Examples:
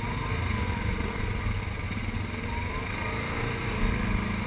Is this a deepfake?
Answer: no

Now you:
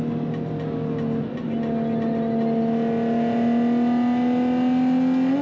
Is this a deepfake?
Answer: no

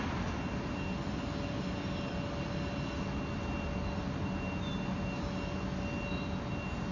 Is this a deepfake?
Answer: no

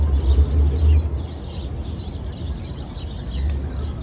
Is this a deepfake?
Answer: no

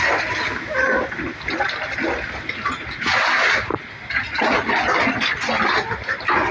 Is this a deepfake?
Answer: no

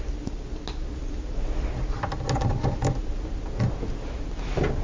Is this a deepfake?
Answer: no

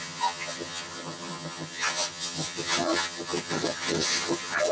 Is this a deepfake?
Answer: yes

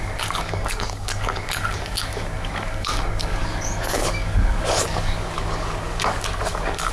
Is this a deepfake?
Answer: yes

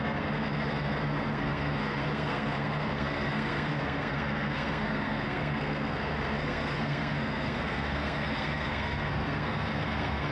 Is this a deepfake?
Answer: yes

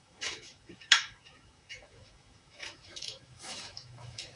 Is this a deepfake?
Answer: yes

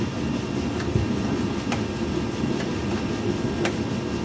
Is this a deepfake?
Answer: no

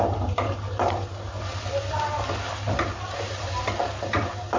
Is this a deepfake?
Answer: no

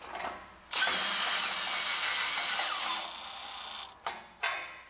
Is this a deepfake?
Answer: no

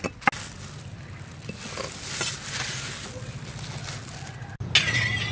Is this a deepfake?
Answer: no